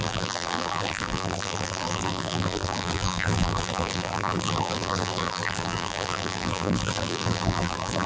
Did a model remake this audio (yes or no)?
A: yes